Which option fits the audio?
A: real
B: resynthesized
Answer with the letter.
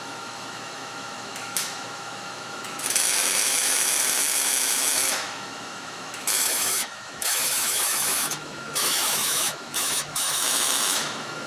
B